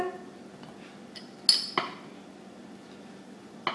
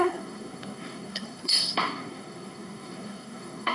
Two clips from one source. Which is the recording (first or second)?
first